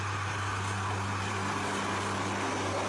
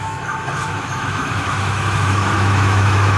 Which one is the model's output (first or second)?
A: second